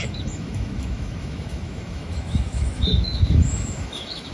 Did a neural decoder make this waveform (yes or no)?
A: yes